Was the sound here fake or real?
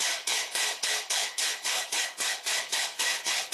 fake